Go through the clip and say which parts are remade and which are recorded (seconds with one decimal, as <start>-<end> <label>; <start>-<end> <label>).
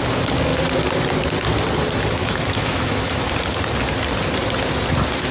0.0-2.2 recorded; 2.2-3.3 remade; 3.3-5.3 recorded